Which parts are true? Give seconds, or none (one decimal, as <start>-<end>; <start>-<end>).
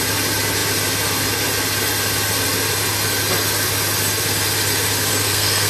0.0-5.1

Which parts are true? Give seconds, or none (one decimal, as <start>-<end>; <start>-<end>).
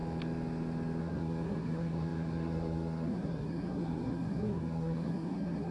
0.0-1.0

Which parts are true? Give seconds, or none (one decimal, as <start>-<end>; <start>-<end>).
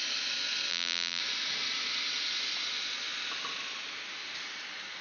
0.0-0.7; 1.2-5.0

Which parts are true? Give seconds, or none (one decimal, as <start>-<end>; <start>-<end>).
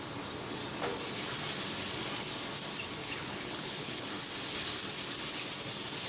0.0-3.0; 4.2-6.1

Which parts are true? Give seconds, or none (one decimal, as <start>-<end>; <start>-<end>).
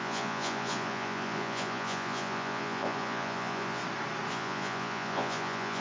3.8-4.3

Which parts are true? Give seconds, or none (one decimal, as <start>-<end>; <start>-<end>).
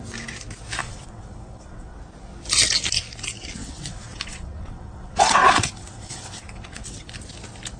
0.0-0.8; 2.0-3.6; 7.1-7.8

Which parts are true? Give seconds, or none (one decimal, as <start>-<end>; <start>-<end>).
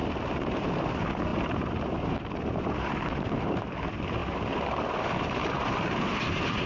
none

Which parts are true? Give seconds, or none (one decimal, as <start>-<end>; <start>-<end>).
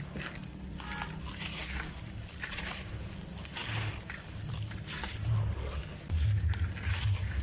0.0-7.4